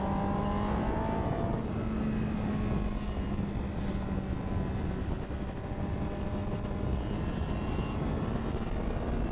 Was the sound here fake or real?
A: real